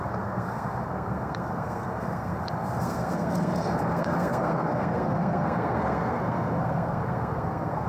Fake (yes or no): yes